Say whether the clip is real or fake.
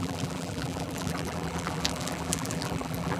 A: fake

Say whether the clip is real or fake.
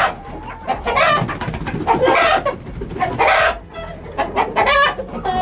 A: real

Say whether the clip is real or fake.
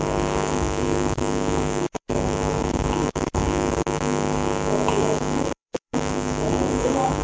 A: fake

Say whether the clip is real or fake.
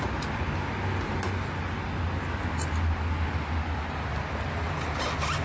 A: real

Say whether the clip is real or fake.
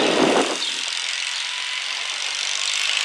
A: real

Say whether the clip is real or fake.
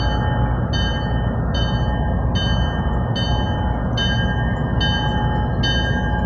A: real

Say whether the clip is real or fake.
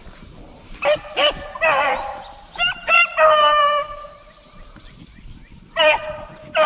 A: fake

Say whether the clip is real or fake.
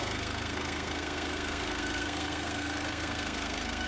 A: fake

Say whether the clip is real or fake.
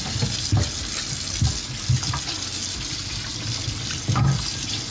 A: real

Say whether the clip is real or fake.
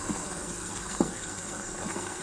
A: fake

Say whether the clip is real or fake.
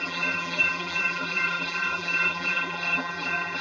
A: fake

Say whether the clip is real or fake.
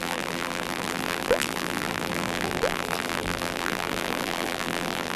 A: fake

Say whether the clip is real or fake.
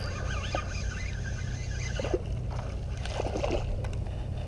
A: real